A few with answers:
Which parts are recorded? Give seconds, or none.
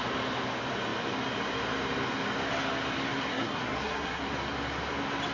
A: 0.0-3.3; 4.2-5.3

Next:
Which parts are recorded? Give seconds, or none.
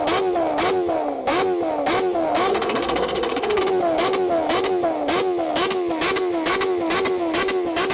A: 0.0-2.5; 3.6-7.9